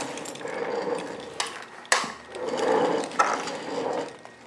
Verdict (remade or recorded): recorded